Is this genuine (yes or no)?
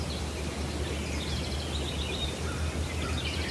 yes